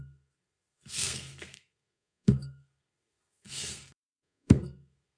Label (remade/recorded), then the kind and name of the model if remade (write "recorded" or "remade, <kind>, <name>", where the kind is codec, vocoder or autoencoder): remade, codec, SNAC